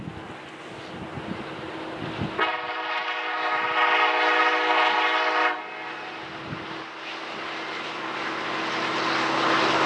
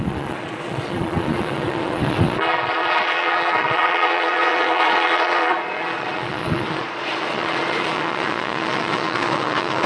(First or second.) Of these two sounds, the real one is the first